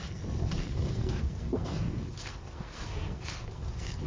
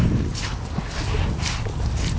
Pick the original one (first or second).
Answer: second